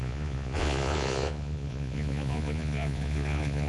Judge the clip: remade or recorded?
remade